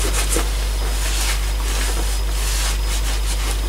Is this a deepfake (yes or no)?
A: no